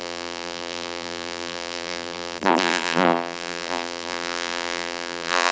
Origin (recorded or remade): remade